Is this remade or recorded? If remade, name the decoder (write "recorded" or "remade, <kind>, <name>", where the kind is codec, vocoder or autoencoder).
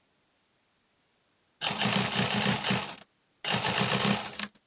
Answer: recorded